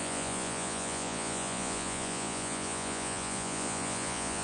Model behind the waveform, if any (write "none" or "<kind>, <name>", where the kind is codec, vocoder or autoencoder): vocoder, Vocos